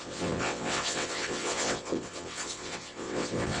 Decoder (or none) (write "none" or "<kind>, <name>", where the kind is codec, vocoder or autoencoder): vocoder, WaveNeXt